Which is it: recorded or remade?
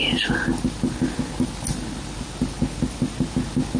recorded